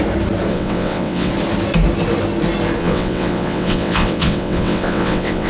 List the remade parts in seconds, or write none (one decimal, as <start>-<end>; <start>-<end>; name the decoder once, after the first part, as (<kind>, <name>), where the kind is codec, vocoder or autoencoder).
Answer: 0.5-1.3 (vocoder, WaveNeXt); 2.8-5.5